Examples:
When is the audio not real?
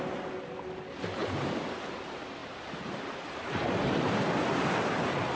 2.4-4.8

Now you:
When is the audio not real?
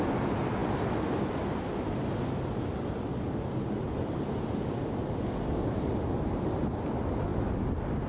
0.6-2.1; 7.3-8.1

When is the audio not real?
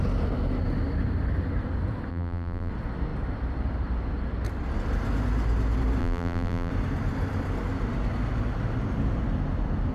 2.1-2.7; 6.0-6.7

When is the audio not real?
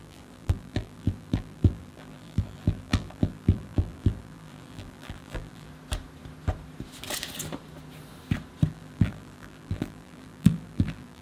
0.0-5.7; 8.7-11.2